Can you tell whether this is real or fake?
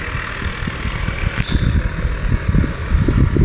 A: real